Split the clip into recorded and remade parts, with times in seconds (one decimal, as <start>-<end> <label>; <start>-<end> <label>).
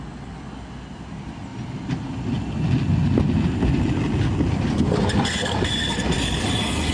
0.0-6.9 recorded